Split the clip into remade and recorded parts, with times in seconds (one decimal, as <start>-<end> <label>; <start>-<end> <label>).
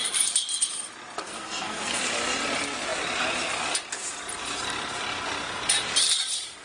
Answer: 0.0-1.2 recorded; 1.2-2.0 remade; 2.0-6.6 recorded